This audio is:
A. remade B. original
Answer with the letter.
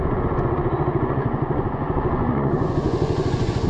A